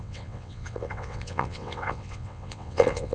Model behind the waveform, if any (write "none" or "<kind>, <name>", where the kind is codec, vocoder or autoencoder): vocoder, WaveNeXt